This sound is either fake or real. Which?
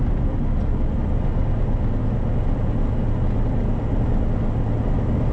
real